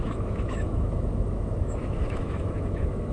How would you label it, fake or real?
fake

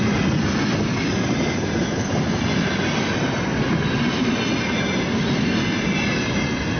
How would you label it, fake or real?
real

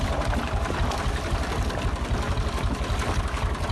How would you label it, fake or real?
real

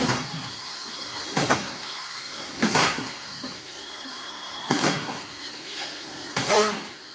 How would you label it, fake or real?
fake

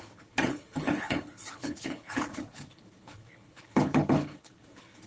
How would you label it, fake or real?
fake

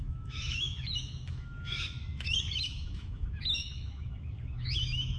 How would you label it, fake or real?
fake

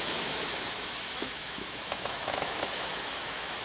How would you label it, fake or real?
fake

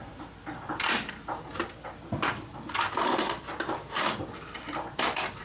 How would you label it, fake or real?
fake